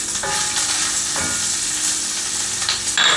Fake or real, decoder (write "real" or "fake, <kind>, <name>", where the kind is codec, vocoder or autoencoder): real